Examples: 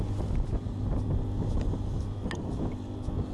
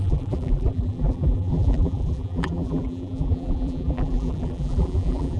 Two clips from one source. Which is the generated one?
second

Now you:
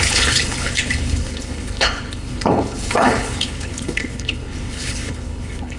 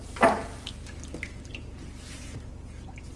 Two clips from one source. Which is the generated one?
first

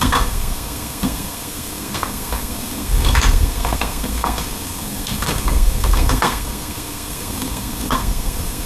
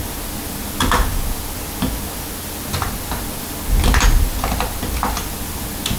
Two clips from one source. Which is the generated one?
first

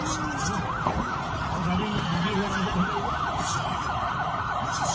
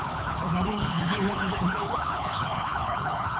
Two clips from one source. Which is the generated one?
second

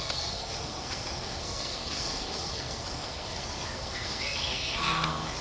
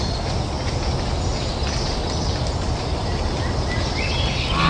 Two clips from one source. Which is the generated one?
first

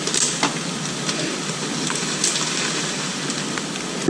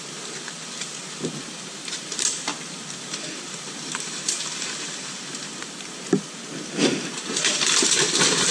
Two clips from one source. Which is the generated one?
second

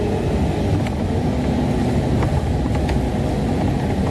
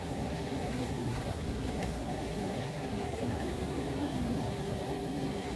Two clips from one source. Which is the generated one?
second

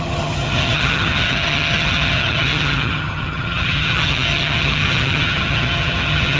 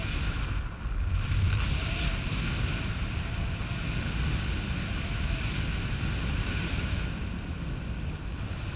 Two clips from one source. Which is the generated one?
first